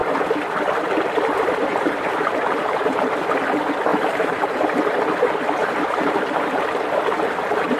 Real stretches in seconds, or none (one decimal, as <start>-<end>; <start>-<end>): 0.0-1.7; 3.1-3.9; 4.7-5.6; 6.6-7.8